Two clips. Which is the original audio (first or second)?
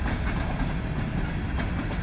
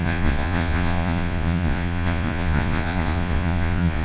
first